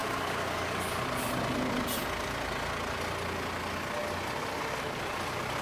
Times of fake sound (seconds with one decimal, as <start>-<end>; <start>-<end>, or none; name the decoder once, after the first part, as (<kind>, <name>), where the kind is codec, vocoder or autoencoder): 0.0-1.0 (codec, DAC)